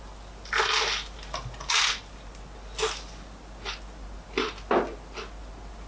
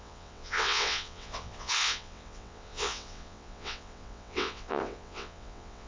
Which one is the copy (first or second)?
second